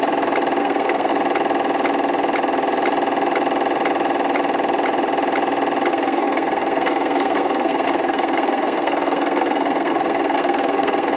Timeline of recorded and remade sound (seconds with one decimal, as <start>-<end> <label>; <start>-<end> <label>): 0.0-0.6 recorded; 0.6-1.1 remade; 1.1-5.9 recorded; 5.9-11.2 remade